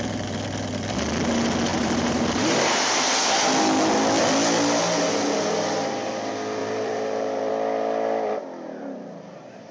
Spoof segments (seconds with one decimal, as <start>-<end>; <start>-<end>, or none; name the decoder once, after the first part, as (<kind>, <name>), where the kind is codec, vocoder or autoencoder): 1.7-2.9 (vocoder, BigVGAN v2); 6.6-7.5